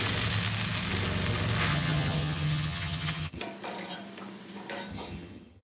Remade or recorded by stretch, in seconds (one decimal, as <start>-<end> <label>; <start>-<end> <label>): 0.0-1.7 recorded; 1.7-3.4 remade; 3.4-4.9 recorded; 4.9-5.6 remade